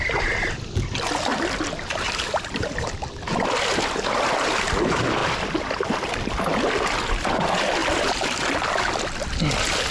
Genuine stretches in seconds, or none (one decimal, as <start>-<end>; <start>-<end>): 0.0-1.3; 3.2-5.2; 6.1-7.8; 8.8-9.9